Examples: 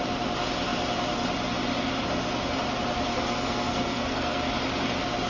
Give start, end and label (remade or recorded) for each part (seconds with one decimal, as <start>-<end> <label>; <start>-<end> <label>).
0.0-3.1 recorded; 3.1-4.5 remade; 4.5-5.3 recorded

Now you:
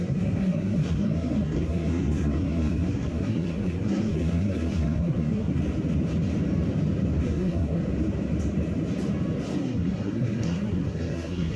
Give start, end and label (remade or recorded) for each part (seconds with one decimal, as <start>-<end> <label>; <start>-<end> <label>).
0.0-5.6 remade; 5.6-7.2 recorded; 7.2-7.8 remade; 7.8-9.6 recorded; 9.6-11.6 remade

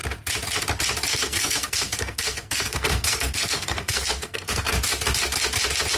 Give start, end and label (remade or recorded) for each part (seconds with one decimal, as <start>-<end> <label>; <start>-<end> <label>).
0.0-1.1 recorded; 1.1-4.7 remade; 4.7-6.0 recorded

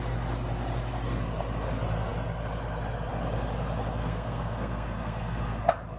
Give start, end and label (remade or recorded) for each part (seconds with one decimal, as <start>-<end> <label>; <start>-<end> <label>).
0.0-4.0 recorded; 4.0-5.6 remade; 5.6-6.0 recorded